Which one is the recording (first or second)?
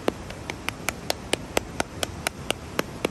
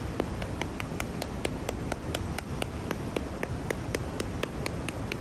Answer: second